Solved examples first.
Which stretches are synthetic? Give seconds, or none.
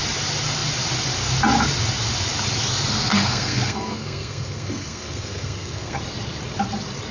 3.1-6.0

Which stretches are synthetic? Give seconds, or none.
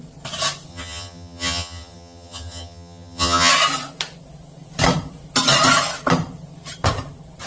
0.7-3.5